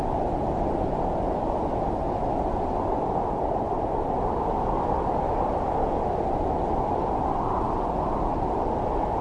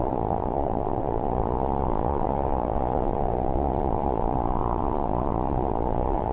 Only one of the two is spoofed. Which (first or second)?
second